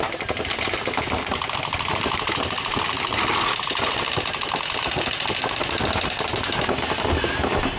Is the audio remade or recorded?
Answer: recorded